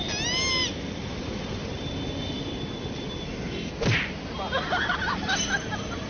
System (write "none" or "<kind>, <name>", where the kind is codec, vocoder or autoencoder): none